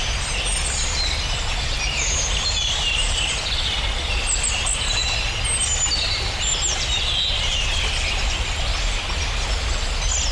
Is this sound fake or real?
real